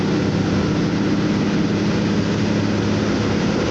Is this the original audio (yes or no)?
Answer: yes